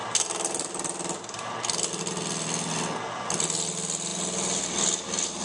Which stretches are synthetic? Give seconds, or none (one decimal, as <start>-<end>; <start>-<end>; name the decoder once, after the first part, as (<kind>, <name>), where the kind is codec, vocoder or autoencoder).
none